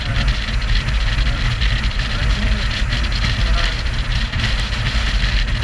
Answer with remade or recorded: recorded